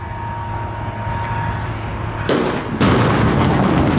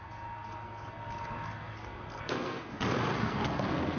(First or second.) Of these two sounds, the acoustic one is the first